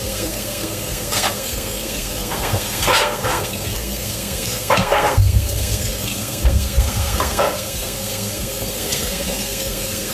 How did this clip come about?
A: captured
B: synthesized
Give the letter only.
B